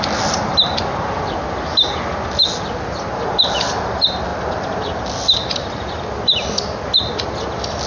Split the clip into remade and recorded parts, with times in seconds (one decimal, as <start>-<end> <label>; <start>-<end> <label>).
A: 0.0-7.9 recorded